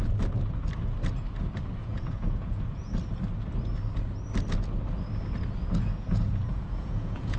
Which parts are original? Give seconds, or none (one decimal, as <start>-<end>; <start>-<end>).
0.0-1.8; 2.9-5.9

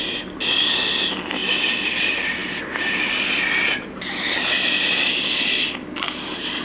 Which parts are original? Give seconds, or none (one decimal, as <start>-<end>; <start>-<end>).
0.0-6.6

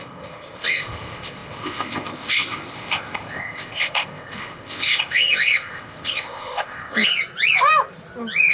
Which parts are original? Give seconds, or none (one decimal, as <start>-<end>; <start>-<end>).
7.1-8.5

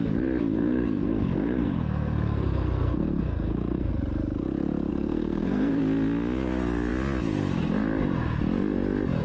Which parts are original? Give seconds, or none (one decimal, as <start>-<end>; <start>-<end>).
0.0-0.5; 3.9-4.9; 5.8-9.2

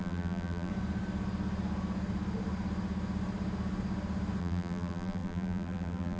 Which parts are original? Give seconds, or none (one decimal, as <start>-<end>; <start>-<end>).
0.7-4.4

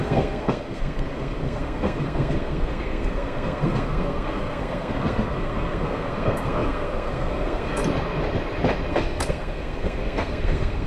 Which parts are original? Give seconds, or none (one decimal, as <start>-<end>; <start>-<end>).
7.8-8.9